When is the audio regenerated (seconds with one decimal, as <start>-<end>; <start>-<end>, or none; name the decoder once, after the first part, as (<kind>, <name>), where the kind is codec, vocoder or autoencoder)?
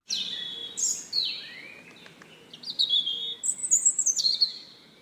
none